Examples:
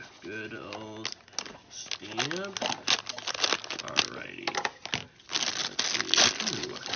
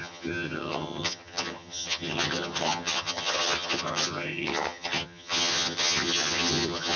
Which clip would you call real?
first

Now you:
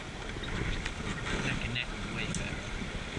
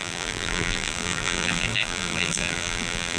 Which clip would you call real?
first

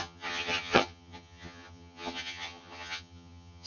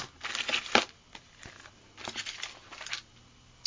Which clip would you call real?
second